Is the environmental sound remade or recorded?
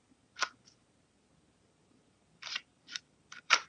remade